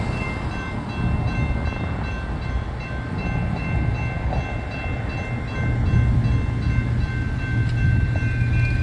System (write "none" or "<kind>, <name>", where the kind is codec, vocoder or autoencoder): none